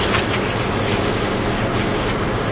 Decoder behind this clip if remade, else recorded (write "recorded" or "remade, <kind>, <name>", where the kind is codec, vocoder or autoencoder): recorded